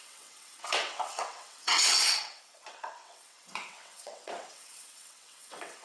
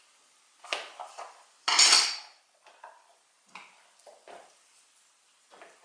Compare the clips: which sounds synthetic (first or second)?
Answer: first